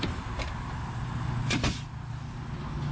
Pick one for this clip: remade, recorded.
recorded